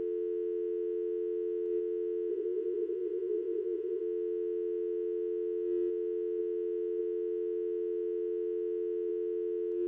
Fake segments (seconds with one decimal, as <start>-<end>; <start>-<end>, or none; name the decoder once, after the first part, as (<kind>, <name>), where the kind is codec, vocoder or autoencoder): 2.3-4.0 (vocoder, Vocos)